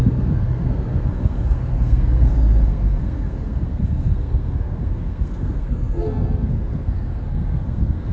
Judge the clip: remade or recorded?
remade